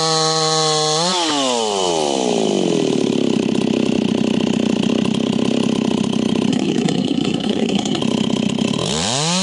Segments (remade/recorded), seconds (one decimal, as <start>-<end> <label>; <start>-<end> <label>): 0.0-6.5 recorded; 6.5-8.0 remade; 8.0-9.4 recorded